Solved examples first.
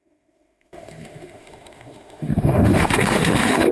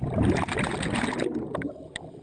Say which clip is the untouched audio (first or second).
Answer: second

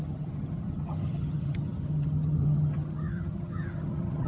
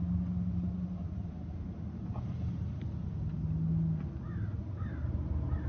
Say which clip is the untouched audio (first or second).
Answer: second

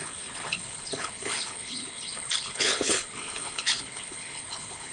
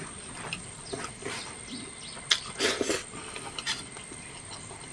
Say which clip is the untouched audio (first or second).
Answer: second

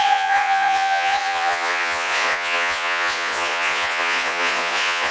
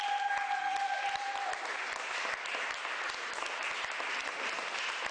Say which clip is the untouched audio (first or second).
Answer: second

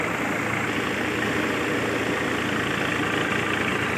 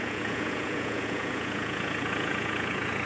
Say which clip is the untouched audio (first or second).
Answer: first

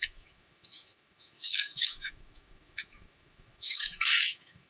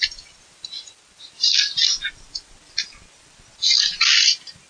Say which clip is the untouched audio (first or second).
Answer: second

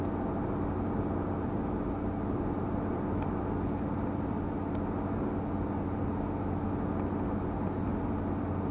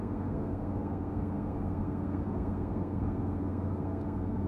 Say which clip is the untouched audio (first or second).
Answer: first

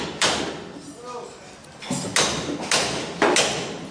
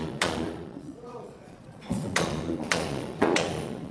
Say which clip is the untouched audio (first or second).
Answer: first